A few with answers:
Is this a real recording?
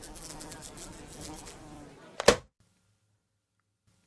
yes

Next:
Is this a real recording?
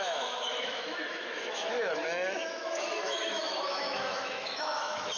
no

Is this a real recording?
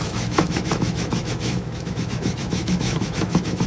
no